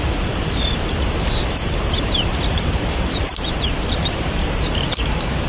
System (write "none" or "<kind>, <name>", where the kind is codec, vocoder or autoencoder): vocoder, BigVGAN v2